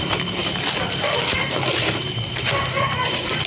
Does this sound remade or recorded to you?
recorded